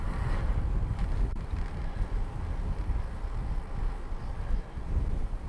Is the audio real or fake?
real